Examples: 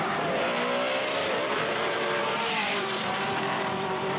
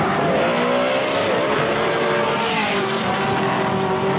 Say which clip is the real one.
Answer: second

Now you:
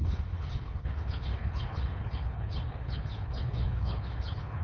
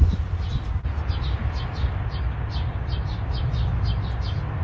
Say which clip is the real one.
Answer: second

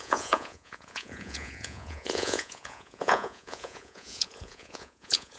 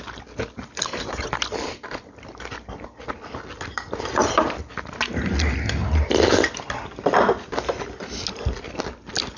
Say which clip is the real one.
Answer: second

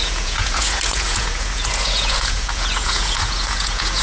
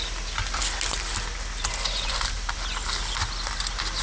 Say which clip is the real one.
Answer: second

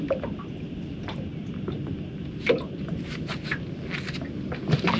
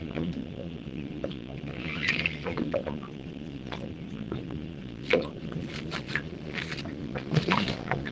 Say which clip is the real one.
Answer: first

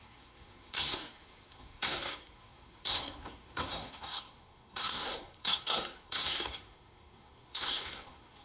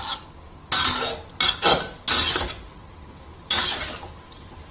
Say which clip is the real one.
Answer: second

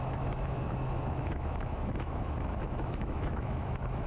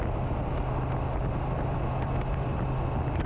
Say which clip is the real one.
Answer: second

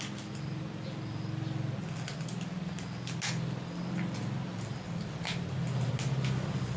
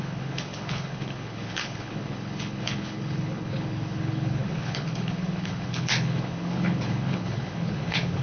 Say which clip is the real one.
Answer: first